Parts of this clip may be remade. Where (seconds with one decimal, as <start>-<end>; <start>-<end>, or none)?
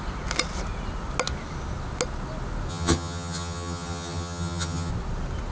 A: 2.7-4.9